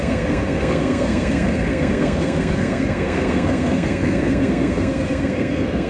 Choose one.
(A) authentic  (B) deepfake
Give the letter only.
B